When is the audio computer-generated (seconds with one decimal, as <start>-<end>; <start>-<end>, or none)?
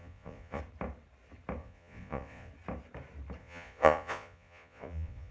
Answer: 0.0-0.6; 1.6-2.5; 3.4-5.3